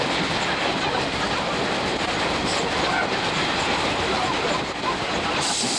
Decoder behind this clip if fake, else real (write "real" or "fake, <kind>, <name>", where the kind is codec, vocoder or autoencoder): real